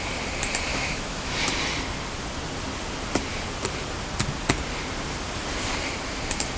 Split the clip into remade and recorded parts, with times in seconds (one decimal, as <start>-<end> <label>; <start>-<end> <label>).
0.0-0.7 recorded; 0.7-1.5 remade; 1.5-6.6 recorded